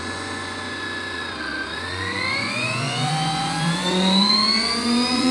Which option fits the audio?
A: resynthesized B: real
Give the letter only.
A